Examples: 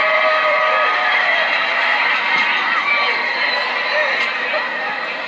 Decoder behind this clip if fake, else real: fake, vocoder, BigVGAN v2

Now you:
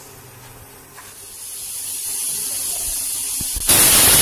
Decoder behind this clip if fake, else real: real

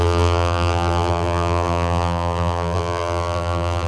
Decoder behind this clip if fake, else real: fake, vocoder, BigVGAN v2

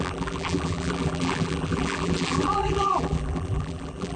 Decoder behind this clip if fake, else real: fake, vocoder, BigVGAN v2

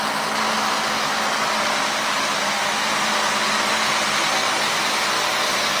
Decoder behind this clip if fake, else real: real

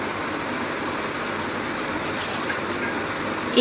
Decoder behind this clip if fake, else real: real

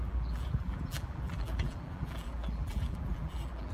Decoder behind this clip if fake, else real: fake, vocoder, BigVGAN v2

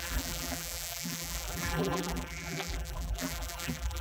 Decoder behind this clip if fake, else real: fake, vocoder, BigVGAN v2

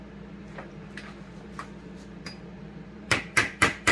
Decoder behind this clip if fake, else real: fake, vocoder, BigVGAN v2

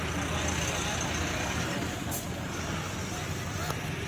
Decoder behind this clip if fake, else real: real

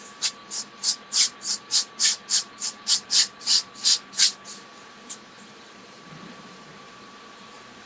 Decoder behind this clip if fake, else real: fake, vocoder, BigVGAN v2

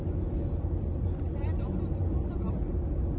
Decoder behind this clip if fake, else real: real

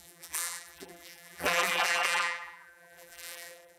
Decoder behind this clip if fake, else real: fake, vocoder, BigVGAN v2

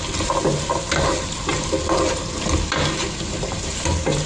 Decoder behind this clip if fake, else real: real